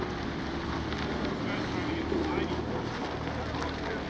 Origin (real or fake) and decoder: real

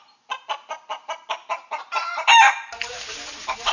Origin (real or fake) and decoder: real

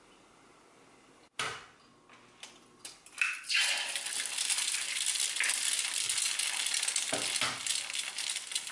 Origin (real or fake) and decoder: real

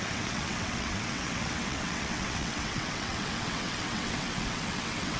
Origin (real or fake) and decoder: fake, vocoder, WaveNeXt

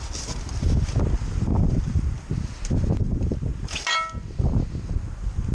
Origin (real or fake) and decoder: real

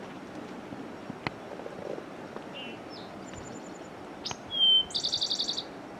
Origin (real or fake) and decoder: real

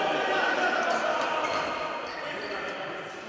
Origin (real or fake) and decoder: real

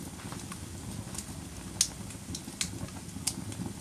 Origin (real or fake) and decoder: real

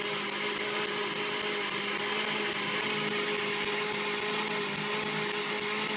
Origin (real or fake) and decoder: real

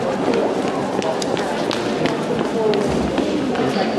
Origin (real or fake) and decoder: real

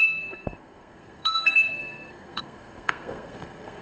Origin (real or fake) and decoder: fake, codec, SNAC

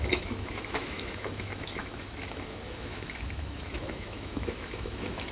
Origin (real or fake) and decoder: fake, autoencoder, DAC-VAE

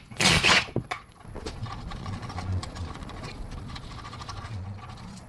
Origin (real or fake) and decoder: fake, vocoder, Vocos